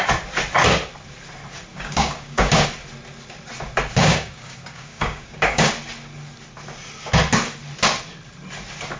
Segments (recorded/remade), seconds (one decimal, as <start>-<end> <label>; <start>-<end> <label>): 0.0-1.7 recorded; 1.7-2.7 remade; 2.7-4.0 recorded; 4.0-5.7 remade; 5.7-9.0 recorded